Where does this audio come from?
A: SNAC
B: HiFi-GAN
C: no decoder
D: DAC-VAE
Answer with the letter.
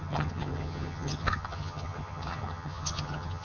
B